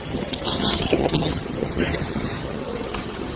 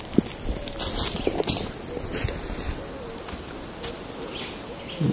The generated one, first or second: first